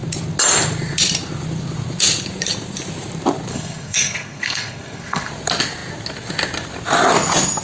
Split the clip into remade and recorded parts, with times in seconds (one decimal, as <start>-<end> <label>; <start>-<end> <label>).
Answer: 0.0-3.5 recorded; 3.5-5.3 remade; 5.3-7.6 recorded